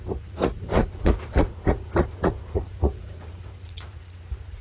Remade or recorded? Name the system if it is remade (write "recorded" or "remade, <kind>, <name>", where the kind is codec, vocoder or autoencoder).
remade, vocoder, Vocos